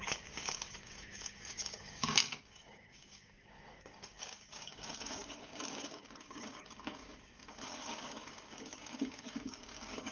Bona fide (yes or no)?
no